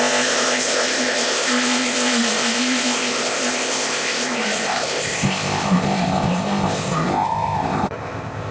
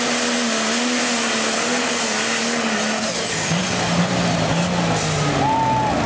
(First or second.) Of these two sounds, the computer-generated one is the first